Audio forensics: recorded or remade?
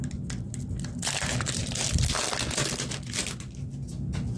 recorded